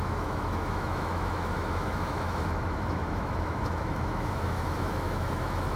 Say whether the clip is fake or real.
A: fake